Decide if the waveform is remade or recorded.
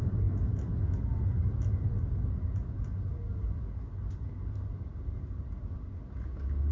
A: recorded